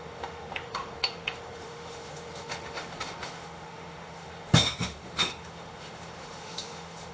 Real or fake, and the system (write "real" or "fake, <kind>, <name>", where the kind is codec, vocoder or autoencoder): fake, autoencoder, DAC-VAE